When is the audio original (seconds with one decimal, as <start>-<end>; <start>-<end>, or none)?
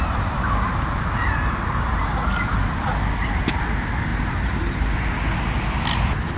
0.0-4.1; 5.1-6.4